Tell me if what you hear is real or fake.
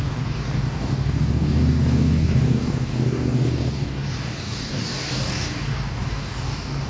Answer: fake